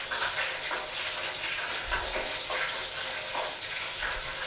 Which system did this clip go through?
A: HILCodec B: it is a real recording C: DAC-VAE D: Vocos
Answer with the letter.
B